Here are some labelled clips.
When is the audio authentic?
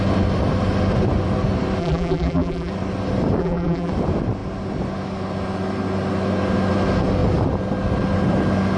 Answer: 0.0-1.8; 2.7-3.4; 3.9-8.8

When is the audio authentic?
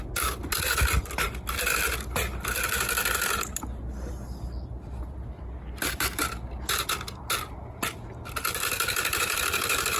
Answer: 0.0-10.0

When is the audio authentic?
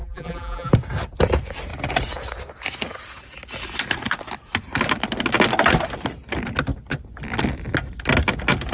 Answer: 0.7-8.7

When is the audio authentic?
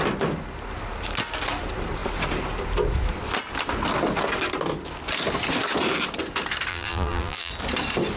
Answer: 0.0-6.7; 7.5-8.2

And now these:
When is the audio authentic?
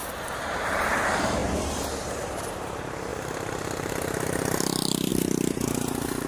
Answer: none